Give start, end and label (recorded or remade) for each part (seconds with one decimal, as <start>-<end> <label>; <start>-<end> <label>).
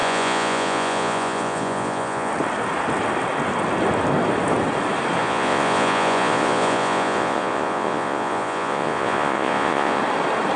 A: 0.0-2.3 remade; 2.3-5.2 recorded; 5.2-10.0 remade; 10.0-10.6 recorded